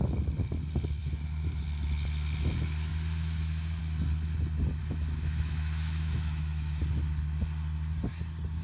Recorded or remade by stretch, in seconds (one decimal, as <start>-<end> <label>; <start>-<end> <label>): 0.0-1.0 recorded; 1.0-1.6 remade; 1.6-2.9 recorded; 2.9-3.8 remade; 3.8-4.8 recorded; 4.8-6.8 remade; 6.8-8.6 recorded